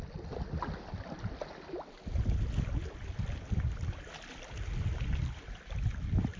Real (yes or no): yes